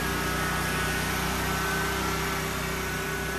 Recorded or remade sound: recorded